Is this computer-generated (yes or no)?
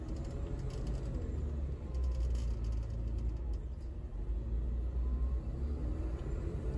no